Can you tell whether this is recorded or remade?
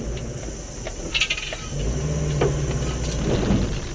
recorded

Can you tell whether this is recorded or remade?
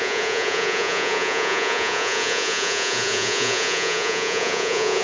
remade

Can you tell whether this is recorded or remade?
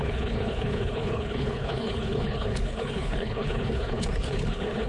remade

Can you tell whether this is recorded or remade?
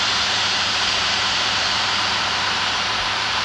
remade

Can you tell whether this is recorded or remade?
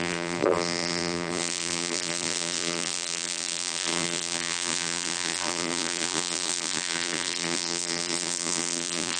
remade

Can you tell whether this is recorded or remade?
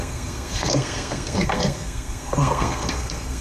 remade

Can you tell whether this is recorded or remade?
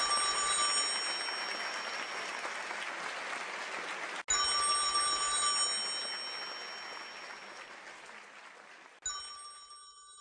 recorded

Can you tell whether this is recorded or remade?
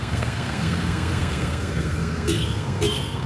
remade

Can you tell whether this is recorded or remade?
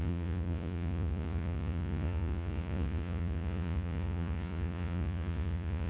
remade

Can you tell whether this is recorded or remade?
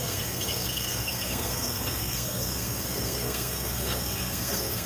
remade